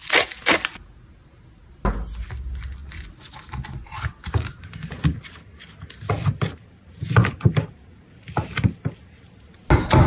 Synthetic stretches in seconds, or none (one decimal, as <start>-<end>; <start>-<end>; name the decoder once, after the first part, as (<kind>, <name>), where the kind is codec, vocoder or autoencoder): none